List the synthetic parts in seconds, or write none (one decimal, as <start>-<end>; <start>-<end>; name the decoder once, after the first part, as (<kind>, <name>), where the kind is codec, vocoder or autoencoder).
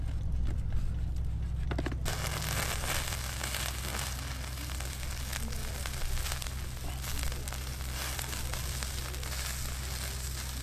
none